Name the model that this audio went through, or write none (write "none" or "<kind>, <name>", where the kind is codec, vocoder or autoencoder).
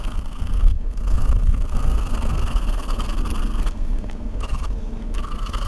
codec, SNAC